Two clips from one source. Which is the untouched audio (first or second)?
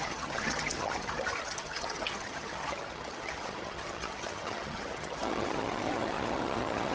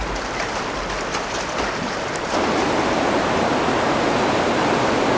second